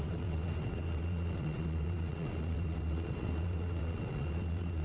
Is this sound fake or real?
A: fake